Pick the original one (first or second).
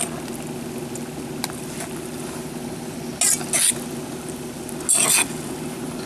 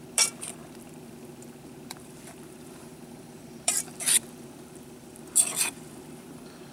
first